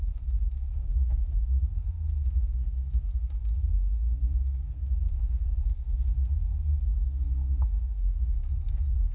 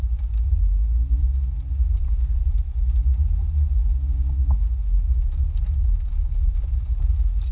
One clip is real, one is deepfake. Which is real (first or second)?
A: second